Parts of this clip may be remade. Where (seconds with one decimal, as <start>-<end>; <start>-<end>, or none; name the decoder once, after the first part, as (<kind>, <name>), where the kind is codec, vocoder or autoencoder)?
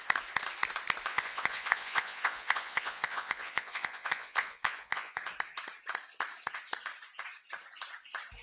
1.1-5.2 (vocoder, Vocos)